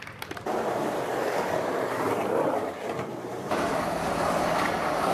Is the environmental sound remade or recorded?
remade